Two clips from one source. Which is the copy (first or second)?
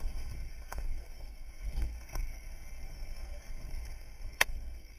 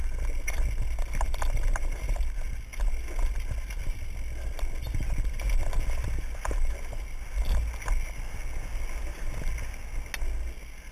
first